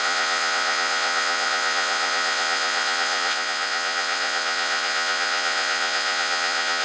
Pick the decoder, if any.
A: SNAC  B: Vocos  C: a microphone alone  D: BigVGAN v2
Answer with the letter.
B